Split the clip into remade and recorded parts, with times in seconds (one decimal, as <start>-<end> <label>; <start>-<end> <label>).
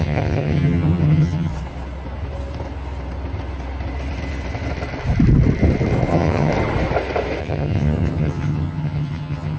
0.0-1.5 remade; 1.5-6.1 recorded; 6.1-6.5 remade; 6.5-7.4 recorded; 7.4-9.6 remade